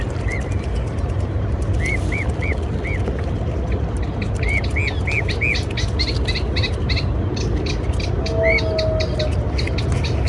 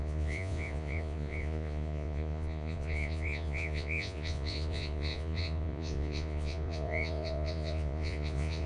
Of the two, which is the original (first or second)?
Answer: first